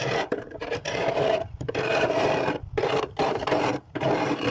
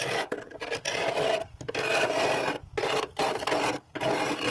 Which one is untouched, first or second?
second